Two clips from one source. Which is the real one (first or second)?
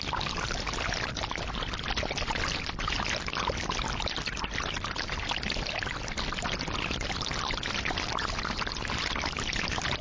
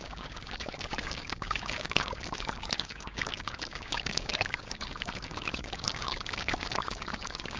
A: first